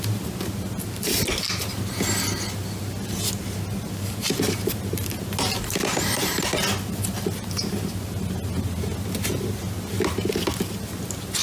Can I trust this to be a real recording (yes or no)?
yes